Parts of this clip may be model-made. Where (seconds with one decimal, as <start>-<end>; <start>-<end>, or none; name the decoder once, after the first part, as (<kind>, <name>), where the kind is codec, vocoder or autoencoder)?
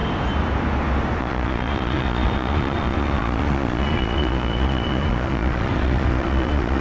1.2-6.8 (vocoder, Vocos)